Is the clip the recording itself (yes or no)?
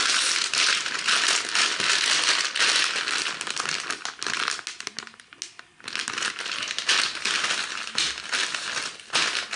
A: yes